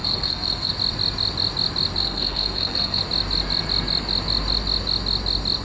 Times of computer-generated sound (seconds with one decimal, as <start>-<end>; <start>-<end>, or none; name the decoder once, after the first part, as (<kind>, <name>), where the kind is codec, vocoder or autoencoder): 0.0-0.7 (codec, SNAC); 2.0-3.0